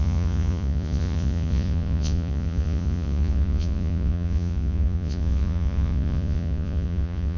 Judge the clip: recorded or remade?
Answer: remade